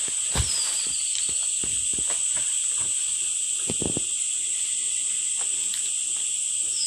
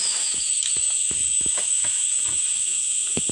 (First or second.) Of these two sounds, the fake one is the second